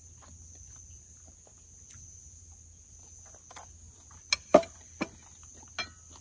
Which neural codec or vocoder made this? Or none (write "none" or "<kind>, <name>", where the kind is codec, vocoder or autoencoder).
none